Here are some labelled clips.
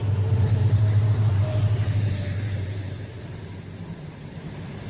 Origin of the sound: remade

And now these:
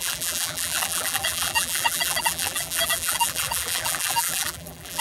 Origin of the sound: remade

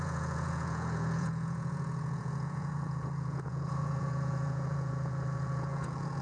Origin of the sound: remade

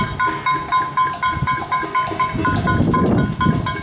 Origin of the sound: recorded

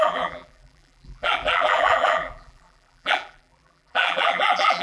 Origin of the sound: remade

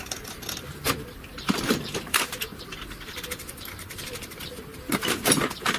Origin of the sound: remade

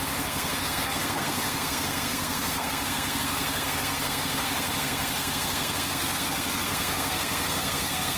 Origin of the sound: remade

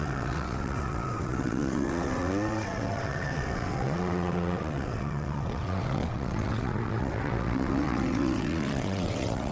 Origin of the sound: remade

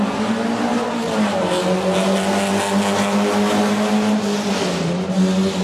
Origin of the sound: recorded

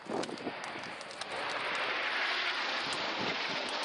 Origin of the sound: recorded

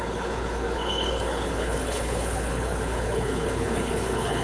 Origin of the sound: remade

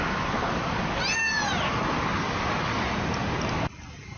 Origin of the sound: recorded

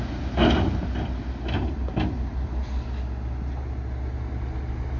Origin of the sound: recorded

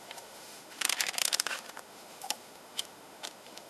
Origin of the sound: remade